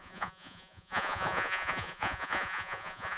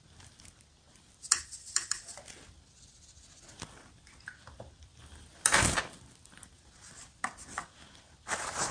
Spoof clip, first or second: first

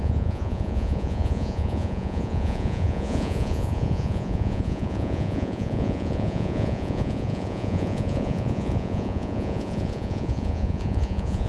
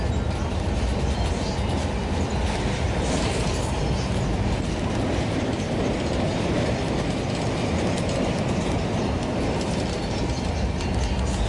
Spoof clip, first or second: first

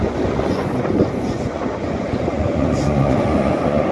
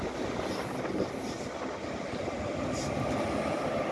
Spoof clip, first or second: first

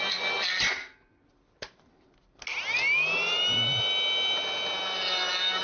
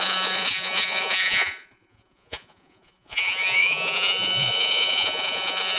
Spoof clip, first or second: second